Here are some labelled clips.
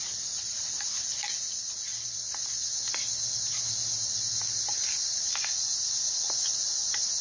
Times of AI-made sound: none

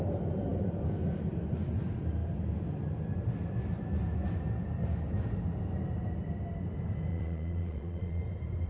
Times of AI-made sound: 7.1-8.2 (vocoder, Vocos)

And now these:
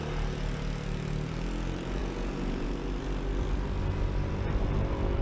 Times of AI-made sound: 2.0-2.7 (vocoder, Vocos)

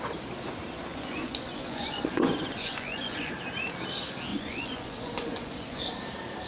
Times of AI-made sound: 0.9-3.3 (vocoder, Vocos); 4.3-6.0